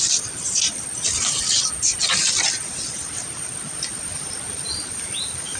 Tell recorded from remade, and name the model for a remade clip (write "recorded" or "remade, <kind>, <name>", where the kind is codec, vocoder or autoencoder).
recorded